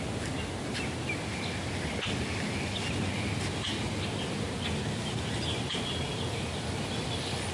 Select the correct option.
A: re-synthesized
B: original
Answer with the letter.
B